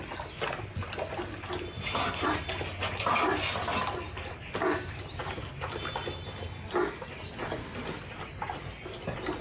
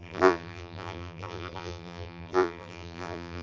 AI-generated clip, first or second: second